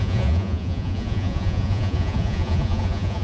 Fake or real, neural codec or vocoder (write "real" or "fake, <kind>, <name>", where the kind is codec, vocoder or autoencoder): fake, vocoder, Vocos